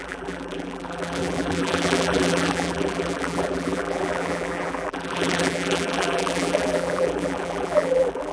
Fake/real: fake